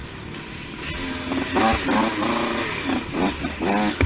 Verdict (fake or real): real